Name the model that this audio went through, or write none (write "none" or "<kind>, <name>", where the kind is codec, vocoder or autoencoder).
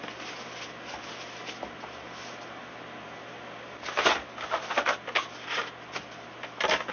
none